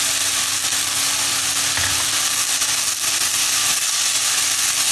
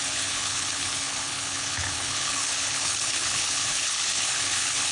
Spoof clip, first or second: second